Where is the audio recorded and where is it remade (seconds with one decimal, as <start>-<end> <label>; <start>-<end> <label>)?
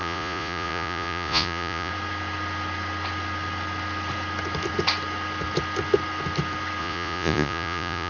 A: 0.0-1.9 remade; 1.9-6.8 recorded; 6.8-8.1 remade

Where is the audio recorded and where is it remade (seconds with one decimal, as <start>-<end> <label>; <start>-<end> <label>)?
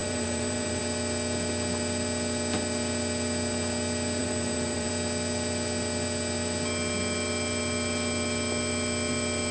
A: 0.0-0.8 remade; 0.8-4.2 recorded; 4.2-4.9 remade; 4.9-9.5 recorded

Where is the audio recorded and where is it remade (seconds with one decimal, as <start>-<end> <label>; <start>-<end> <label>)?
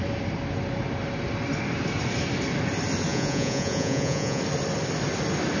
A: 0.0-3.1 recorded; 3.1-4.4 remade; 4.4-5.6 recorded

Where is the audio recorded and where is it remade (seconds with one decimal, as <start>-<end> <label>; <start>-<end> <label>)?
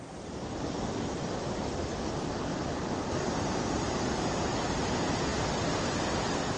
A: 0.0-2.5 recorded; 2.5-4.0 remade; 4.0-6.6 recorded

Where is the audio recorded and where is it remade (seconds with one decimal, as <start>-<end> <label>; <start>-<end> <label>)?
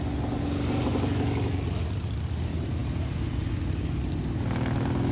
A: 0.0-5.1 recorded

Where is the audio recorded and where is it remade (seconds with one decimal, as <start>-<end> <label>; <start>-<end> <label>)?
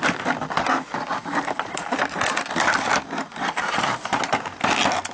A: 0.0-1.2 recorded; 1.2-2.4 remade; 2.4-3.3 recorded; 3.3-4.2 remade; 4.2-5.1 recorded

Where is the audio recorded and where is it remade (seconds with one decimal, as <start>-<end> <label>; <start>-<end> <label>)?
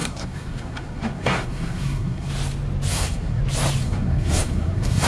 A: 0.0-2.3 remade; 2.3-2.9 recorded; 2.9-3.4 remade; 3.4-3.8 recorded; 3.8-5.1 remade